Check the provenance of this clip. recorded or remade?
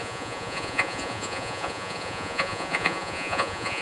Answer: remade